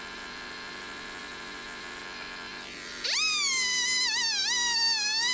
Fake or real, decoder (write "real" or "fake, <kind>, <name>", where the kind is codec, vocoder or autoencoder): real